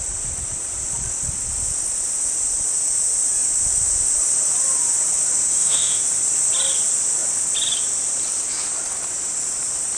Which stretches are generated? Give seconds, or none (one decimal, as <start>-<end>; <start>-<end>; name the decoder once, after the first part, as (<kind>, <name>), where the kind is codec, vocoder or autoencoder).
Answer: 5.5-6.0 (autoencoder, DAC-VAE)